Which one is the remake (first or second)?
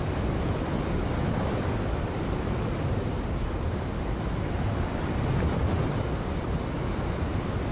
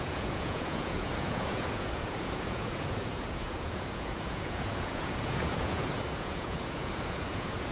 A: second